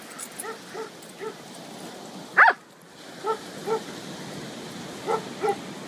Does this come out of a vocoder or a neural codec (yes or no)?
no